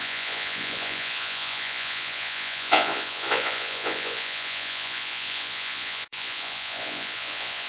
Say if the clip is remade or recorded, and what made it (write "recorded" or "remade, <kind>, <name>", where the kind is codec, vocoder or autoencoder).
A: remade, vocoder, Vocos